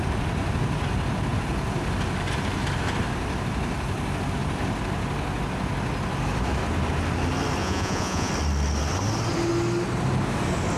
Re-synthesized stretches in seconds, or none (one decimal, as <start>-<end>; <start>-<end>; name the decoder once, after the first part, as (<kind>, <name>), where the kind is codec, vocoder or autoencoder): 7.6-8.3 (vocoder, Vocos)